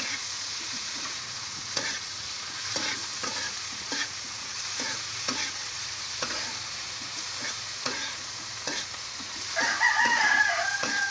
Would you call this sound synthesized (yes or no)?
yes